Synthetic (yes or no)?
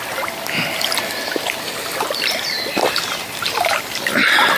no